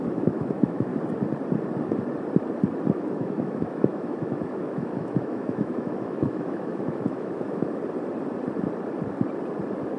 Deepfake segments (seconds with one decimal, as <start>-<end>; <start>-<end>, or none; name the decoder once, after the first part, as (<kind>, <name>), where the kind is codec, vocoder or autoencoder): 0.0-0.9 (autoencoder, DAC-VAE); 2.9-7.8